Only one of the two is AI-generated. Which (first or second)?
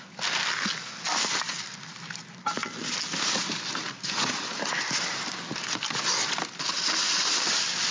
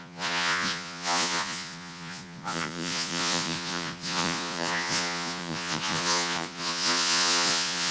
second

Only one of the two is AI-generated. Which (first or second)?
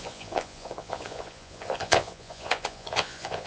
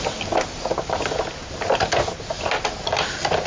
first